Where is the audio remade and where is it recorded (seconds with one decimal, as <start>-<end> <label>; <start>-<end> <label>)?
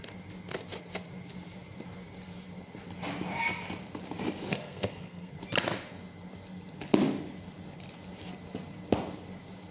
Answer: 0.0-4.5 recorded; 4.5-5.3 remade; 5.3-9.7 recorded